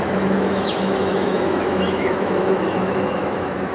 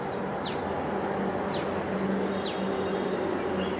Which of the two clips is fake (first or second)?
first